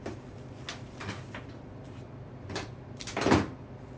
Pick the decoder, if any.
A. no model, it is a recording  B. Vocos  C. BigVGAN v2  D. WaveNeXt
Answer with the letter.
A